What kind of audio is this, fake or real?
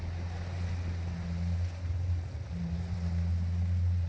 real